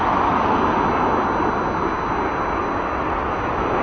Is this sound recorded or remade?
recorded